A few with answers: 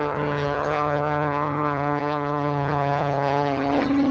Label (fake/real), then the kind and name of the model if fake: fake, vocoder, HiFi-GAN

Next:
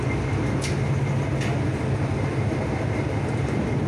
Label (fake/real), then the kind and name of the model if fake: real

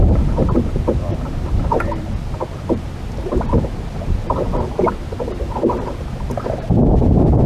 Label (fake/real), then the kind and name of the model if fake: fake, vocoder, BigVGAN v2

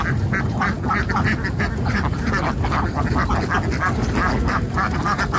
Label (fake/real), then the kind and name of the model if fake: real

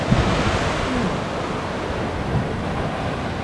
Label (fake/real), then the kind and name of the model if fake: real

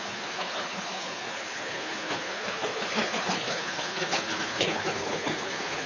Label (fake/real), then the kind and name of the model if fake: fake, codec, HILCodec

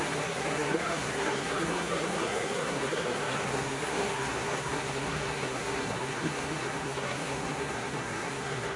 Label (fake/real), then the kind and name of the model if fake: fake, codec, SNAC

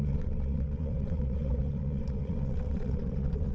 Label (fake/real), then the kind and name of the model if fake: fake, vocoder, WaveNeXt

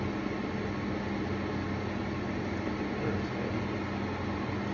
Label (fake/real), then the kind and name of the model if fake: real